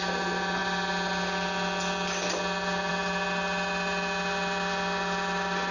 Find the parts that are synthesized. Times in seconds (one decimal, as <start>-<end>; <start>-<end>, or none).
none